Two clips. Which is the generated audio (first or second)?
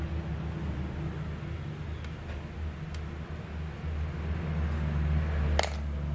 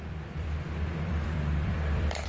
second